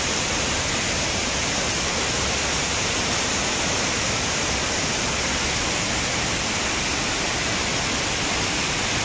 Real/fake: real